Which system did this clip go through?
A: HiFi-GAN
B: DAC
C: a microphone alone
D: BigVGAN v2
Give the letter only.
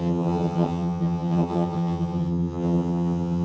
A